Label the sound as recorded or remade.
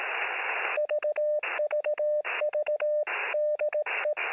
recorded